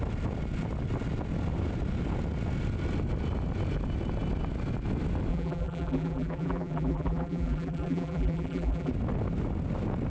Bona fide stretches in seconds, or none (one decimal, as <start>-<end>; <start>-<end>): 0.0-5.3; 8.9-10.1